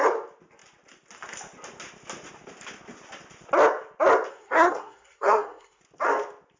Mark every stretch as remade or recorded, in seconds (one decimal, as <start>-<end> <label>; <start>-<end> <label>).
0.0-4.3 recorded; 4.3-5.8 remade; 5.8-6.6 recorded